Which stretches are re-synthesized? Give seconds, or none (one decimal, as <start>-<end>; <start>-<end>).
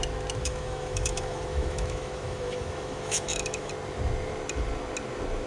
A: 0.4-3.7